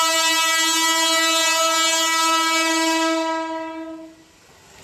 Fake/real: real